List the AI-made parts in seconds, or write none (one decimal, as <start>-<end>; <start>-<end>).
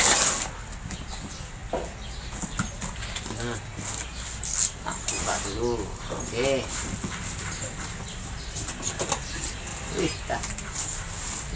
none